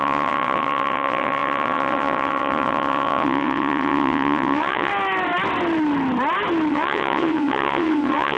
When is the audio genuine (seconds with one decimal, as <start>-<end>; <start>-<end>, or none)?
4.9-6.7